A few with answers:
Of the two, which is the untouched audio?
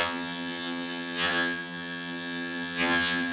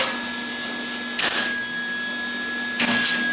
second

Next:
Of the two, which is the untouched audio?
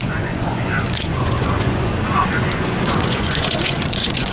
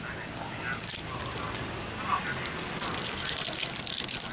second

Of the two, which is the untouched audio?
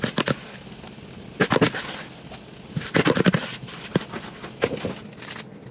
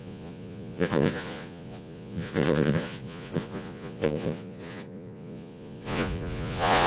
first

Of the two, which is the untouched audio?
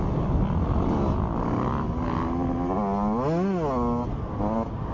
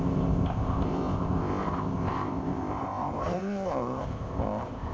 first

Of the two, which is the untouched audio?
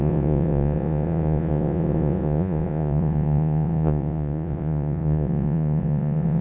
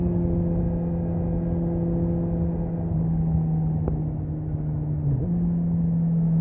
second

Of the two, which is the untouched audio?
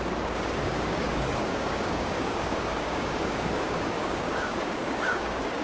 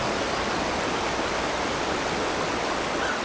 second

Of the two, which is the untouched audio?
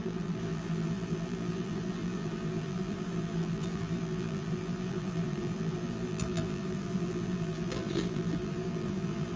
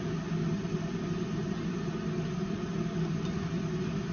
second